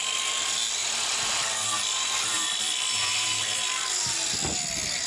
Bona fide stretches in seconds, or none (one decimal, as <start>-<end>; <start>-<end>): 0.0-0.8; 3.6-5.1